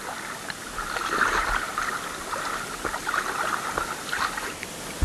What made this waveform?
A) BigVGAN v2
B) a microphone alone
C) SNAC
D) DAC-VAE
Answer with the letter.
B